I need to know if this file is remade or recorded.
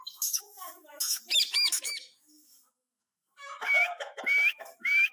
remade